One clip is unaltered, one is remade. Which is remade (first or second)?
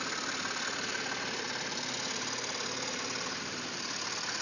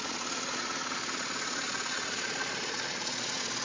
second